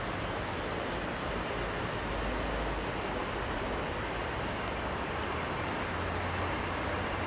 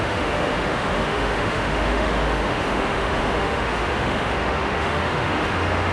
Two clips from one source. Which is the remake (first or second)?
second